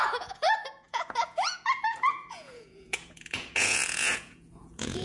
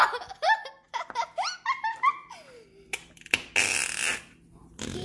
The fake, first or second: first